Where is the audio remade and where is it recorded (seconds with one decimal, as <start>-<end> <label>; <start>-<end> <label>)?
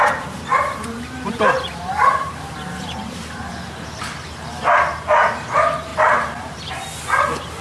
0.0-3.5 remade; 3.5-5.9 recorded; 5.9-6.7 remade; 6.7-7.6 recorded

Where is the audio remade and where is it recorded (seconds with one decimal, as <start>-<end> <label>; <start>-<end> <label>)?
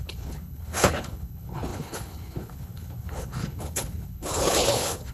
0.0-5.1 remade